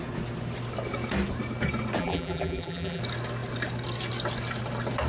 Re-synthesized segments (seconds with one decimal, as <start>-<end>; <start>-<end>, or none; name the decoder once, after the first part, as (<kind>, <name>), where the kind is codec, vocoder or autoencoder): 2.0-3.0 (vocoder, BigVGAN v2)